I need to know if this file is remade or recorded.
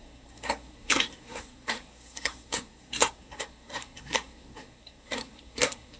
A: remade